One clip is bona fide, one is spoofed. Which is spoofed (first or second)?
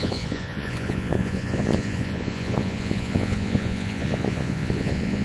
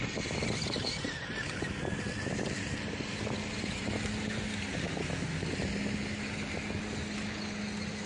first